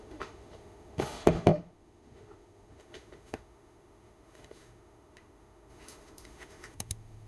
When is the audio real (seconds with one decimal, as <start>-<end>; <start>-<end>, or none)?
none